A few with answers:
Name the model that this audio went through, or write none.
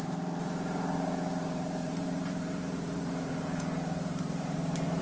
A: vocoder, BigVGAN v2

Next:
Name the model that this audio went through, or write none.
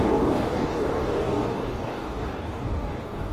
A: codec, DAC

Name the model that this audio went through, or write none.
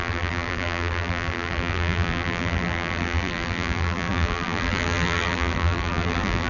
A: vocoder, BigVGAN v2